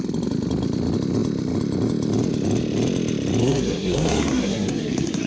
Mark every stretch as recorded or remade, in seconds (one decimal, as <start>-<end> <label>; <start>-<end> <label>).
0.0-3.4 recorded; 3.4-5.3 remade